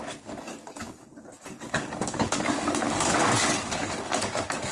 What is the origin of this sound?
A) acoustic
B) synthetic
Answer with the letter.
B